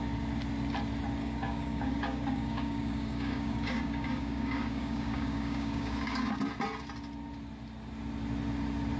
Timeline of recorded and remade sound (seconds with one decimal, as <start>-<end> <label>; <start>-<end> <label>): 0.0-1.2 recorded; 1.2-6.4 remade; 6.4-9.0 recorded